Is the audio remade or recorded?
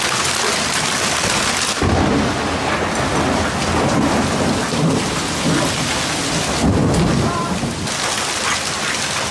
recorded